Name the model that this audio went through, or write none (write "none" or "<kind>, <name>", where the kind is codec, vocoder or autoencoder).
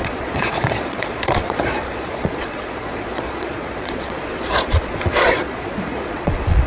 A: vocoder, Vocos